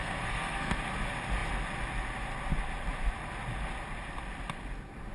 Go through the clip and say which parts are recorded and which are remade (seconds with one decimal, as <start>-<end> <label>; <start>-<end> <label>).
0.0-0.8 remade; 0.8-5.1 recorded